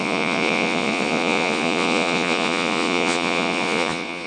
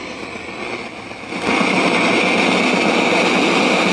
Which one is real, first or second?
second